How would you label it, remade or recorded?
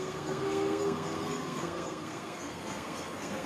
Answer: remade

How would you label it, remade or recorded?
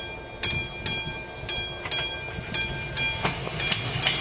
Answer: recorded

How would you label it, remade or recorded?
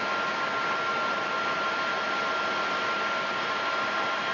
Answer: recorded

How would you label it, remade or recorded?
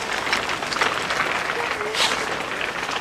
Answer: recorded